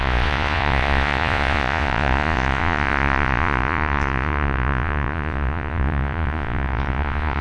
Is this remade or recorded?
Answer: remade